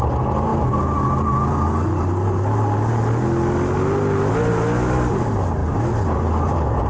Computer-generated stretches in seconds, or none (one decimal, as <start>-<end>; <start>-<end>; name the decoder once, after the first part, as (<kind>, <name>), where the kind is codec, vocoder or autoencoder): none